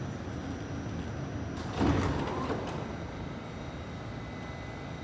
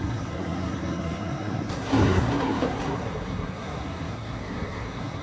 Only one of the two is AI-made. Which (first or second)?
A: second